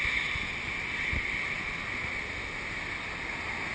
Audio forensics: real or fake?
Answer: real